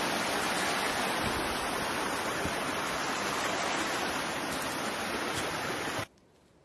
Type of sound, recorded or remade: recorded